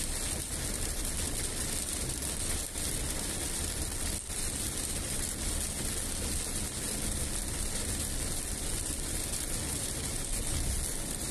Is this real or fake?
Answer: real